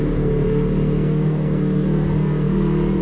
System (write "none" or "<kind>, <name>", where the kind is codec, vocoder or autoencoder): codec, SNAC